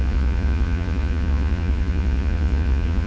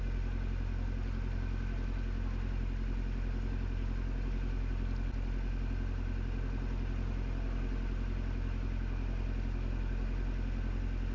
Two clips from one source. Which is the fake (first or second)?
first